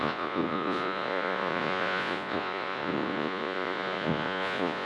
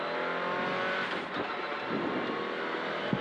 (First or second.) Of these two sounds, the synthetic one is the first